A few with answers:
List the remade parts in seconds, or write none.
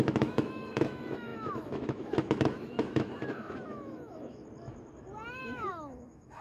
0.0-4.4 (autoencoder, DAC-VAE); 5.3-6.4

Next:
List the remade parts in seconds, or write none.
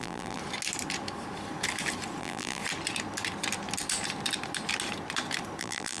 0.0-0.4 (vocoder, BigVGAN v2); 2.2-2.6; 5.6-6.0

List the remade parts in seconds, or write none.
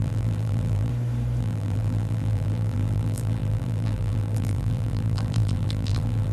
0.0-0.9 (vocoder, BigVGAN v2); 1.4-6.3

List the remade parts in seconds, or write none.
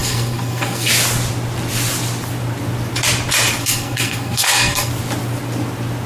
0.0-0.9 (codec, SNAC); 3.6-4.9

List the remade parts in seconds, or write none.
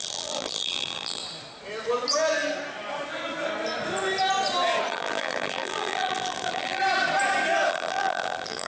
0.0-1.2 (vocoder, BigVGAN v2); 4.9-6.8; 7.7-8.7